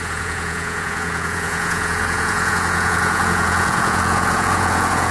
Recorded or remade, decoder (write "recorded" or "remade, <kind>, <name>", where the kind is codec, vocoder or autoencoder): remade, vocoder, Vocos